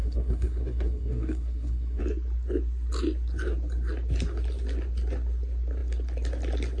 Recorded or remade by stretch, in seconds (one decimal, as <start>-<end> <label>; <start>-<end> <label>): 0.0-2.0 remade; 2.0-6.8 recorded